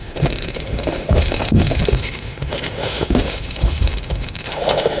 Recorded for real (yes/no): no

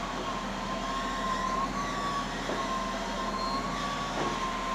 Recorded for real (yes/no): yes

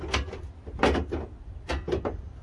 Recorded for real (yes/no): yes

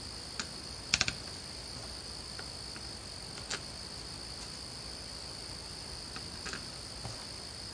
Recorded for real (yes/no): yes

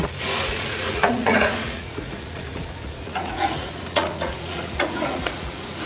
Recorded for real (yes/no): no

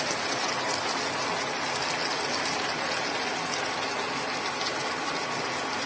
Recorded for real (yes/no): yes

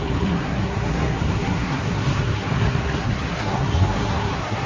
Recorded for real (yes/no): no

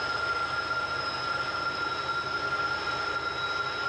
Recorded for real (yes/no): yes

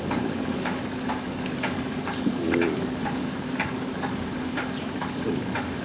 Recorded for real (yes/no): no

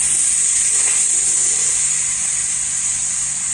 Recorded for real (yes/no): yes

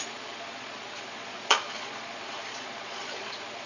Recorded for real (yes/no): no